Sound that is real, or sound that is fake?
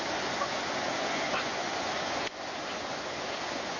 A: fake